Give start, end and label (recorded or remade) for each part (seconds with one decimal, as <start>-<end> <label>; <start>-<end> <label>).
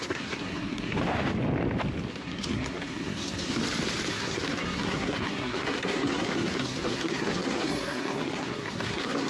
0.0-1.0 remade; 1.0-2.1 recorded; 2.1-3.6 remade; 3.6-4.1 recorded; 4.1-9.3 remade